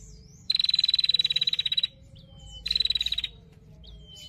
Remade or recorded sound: remade